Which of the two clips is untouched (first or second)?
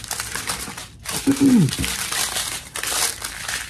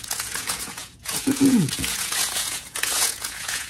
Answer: first